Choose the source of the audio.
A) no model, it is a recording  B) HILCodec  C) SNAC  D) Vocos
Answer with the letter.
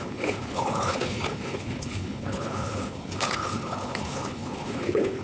B